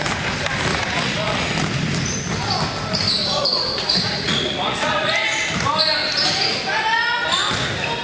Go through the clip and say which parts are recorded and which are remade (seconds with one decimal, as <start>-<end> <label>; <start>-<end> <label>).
0.0-0.7 recorded; 0.7-1.5 remade; 1.5-3.2 recorded; 3.2-5.1 remade; 5.1-8.0 recorded